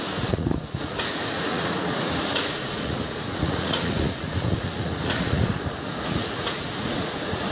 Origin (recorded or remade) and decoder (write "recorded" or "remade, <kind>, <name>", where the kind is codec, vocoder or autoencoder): remade, vocoder, Vocos